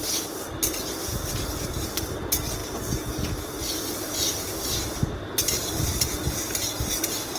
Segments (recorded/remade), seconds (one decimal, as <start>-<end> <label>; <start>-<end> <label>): 0.0-7.4 recorded